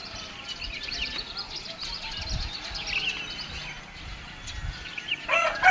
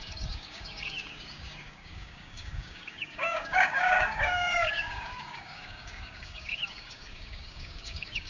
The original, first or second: first